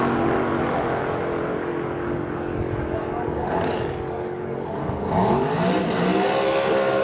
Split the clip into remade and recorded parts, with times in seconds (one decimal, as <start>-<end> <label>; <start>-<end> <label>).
0.0-1.5 recorded; 1.5-5.6 remade; 5.6-7.0 recorded